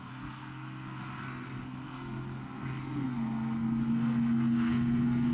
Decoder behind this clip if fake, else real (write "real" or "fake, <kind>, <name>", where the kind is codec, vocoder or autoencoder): fake, codec, SNAC